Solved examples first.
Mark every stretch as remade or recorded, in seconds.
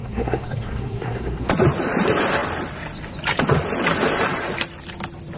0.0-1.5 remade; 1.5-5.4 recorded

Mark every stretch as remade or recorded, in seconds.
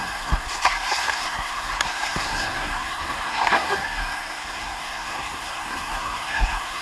0.0-6.8 remade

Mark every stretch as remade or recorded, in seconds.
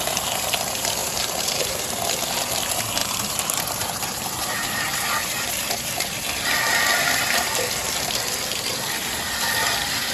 0.0-1.0 recorded; 1.0-1.9 remade; 1.9-3.0 recorded; 3.0-5.5 remade; 5.5-10.1 recorded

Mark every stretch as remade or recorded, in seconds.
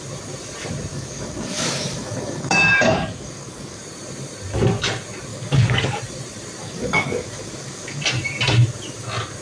0.0-0.9 recorded; 0.9-3.8 remade; 3.8-5.3 recorded; 5.3-6.0 remade; 6.0-6.6 recorded; 6.6-8.0 remade; 8.0-9.4 recorded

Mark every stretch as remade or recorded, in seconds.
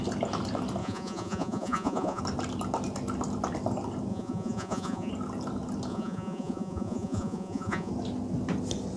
0.0-0.8 recorded; 0.8-2.2 remade; 2.2-4.1 recorded; 4.1-5.1 remade; 5.1-5.9 recorded; 5.9-7.9 remade; 7.9-9.0 recorded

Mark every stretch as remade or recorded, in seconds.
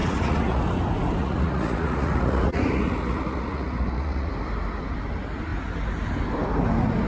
0.0-0.6 remade; 0.6-1.2 recorded; 1.2-4.3 remade; 4.3-7.1 recorded